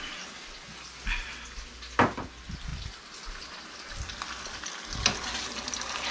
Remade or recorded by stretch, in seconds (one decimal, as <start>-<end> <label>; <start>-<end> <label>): 0.0-6.1 recorded